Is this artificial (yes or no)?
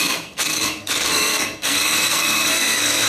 yes